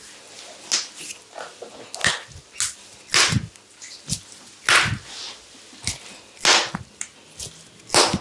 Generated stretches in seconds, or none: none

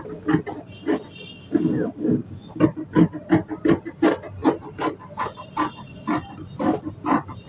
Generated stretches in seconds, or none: none